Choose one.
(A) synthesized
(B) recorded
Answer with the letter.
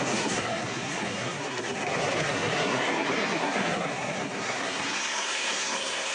A